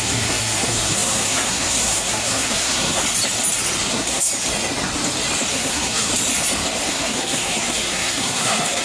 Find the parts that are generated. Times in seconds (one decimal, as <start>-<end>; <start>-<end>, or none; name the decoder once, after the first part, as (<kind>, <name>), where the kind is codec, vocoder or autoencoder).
0.0-3.0 (codec, SNAC); 3.9-4.3; 5.5-6.1; 6.9-8.8